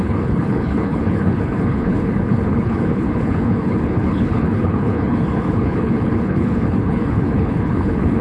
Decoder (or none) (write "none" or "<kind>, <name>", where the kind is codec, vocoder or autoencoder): codec, HILCodec